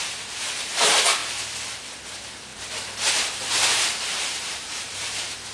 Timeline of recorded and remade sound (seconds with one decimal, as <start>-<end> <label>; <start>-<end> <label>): 0.0-1.2 remade; 1.2-2.1 recorded; 2.1-2.5 remade; 2.5-3.1 recorded; 3.1-5.5 remade